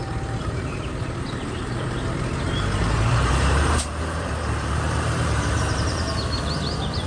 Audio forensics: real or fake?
fake